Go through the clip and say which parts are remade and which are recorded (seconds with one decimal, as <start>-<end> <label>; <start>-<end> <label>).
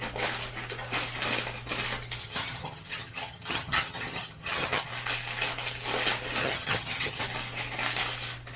0.0-2.2 recorded; 2.2-4.9 remade; 4.9-6.4 recorded; 6.4-7.2 remade; 7.2-8.6 recorded